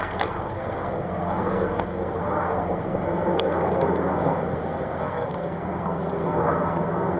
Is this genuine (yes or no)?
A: no